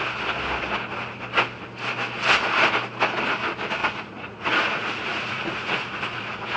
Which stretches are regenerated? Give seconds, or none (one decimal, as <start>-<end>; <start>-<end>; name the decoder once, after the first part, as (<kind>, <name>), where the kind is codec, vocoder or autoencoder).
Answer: 3.8-6.6 (vocoder, Vocos)